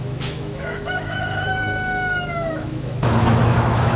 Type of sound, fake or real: fake